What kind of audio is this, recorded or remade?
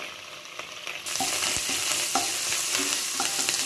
recorded